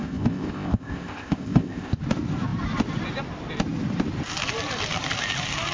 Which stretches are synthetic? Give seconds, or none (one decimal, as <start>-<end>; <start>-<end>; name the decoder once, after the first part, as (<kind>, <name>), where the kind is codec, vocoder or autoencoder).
0.0-2.0 (codec, ZipCodec)

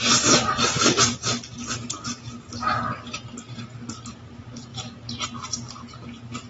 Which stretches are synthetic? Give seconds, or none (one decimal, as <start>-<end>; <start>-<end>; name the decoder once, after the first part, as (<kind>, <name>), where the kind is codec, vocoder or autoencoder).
0.0-3.6 (vocoder, BigVGAN v2); 4.7-5.3

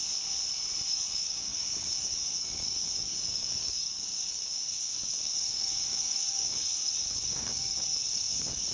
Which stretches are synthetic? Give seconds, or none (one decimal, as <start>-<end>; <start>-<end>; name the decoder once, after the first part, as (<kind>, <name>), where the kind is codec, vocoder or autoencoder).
0.9-8.7 (codec, DAC)

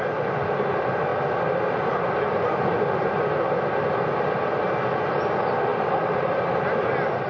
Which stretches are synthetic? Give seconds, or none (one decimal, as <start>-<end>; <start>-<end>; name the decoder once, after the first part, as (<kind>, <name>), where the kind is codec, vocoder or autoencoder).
none

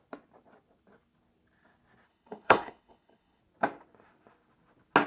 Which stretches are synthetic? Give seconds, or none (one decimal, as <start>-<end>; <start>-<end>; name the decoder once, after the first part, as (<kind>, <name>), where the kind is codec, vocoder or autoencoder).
2.1-3.4 (codec, HILCodec)

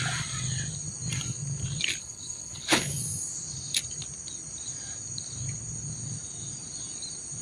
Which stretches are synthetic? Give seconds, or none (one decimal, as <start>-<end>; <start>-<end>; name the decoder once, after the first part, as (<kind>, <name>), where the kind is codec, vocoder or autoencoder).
2.0-2.9 (codec, HILCodec)

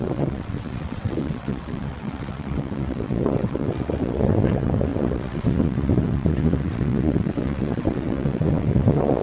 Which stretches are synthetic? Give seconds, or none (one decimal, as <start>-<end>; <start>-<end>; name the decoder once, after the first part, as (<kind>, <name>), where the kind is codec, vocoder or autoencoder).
0.0-9.2 (vocoder, WaveNeXt)